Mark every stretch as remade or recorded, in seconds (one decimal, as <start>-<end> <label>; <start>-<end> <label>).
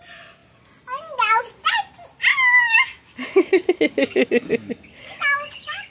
0.0-2.3 recorded; 2.3-5.9 remade